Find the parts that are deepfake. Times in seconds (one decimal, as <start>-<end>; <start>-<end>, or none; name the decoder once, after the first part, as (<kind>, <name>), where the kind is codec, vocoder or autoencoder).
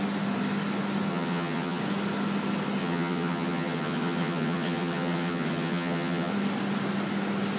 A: 1.1-1.8 (vocoder, HiFi-GAN); 2.8-6.3